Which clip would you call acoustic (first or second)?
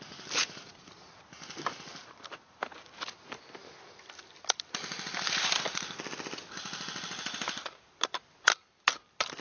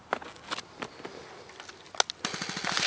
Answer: second